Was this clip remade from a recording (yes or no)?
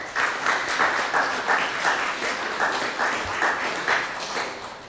no